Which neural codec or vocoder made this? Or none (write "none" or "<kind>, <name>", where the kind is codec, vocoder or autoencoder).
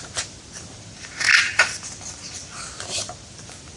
none